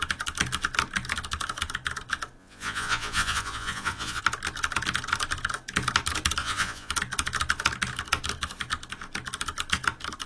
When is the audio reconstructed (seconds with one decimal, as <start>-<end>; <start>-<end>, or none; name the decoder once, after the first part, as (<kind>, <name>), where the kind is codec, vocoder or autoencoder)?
2.4-4.2 (vocoder, Vocos); 6.4-6.9

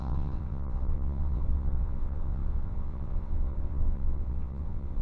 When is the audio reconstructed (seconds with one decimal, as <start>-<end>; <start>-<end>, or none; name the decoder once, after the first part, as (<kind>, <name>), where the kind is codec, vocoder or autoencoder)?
0.0-5.0 (vocoder, WaveNeXt)

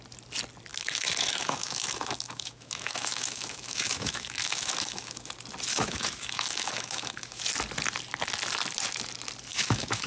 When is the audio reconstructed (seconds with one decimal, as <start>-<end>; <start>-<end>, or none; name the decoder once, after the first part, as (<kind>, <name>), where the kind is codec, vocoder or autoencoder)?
0.7-5.3 (autoencoder, DAC-VAE); 5.7-7.4; 9.5-10.1

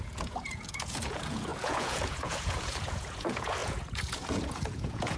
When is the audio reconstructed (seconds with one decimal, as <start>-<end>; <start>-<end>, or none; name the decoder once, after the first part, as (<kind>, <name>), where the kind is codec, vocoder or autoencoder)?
0.0-5.2 (vocoder, Vocos)

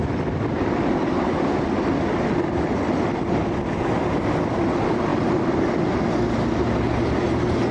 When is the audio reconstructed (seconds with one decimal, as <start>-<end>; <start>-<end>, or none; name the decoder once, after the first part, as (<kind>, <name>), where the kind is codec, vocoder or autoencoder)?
none

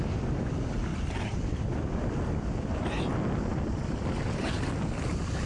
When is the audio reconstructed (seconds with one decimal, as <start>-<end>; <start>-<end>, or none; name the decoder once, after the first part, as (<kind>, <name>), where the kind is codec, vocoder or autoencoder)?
none

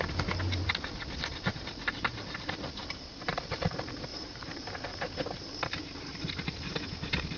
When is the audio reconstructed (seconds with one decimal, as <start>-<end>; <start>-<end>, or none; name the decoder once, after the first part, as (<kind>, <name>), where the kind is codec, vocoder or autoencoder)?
1.5-3.4 (vocoder, BigVGAN v2); 4.1-6.3

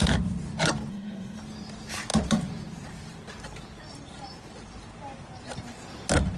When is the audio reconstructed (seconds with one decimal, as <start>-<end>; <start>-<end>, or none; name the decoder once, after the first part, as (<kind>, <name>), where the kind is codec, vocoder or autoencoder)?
0.9-1.4 (codec, SNAC)